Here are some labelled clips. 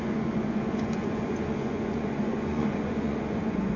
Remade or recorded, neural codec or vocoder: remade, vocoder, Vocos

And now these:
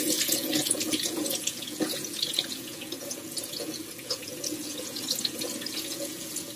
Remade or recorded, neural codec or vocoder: remade, vocoder, Vocos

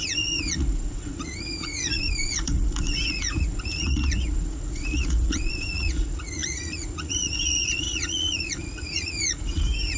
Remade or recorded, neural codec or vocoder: remade, vocoder, Vocos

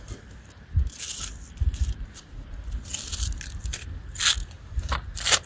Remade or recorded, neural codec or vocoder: recorded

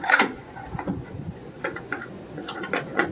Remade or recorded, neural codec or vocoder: remade, vocoder, Vocos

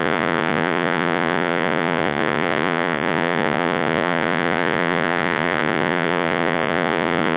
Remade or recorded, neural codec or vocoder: remade, vocoder, Vocos